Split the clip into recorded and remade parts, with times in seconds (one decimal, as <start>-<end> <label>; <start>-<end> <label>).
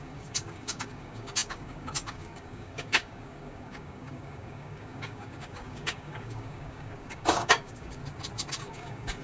0.0-8.0 remade; 8.0-8.6 recorded; 8.6-9.2 remade